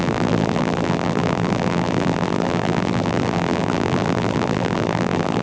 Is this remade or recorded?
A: remade